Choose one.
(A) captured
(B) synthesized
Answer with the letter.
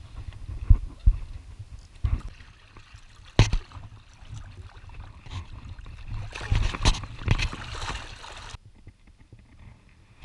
A